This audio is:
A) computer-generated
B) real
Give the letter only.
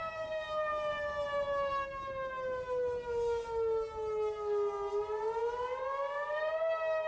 B